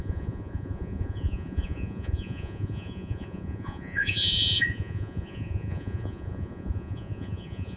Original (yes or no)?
no